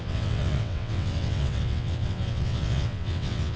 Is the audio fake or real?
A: fake